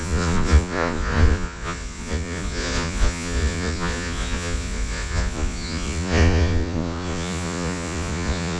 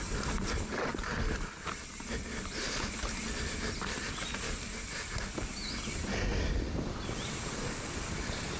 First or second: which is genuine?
second